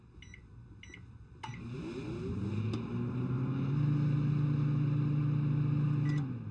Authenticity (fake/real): real